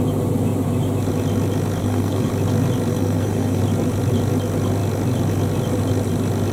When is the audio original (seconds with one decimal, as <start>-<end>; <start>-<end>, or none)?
0.0-1.8; 2.3-2.9; 3.6-6.5

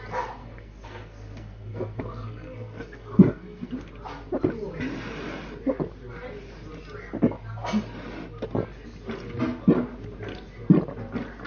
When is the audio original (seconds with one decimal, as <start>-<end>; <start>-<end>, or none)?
0.0-0.4; 3.7-11.5

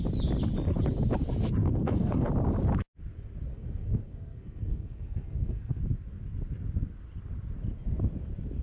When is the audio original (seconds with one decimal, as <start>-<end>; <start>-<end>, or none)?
0.0-1.6; 2.3-3.5; 5.8-8.6

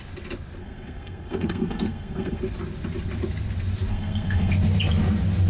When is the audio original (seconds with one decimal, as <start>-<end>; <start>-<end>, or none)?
0.0-0.6; 2.4-3.9; 4.5-5.5